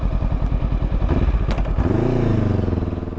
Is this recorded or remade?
recorded